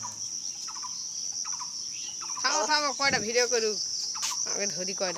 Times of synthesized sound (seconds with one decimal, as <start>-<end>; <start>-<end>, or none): 3.9-4.7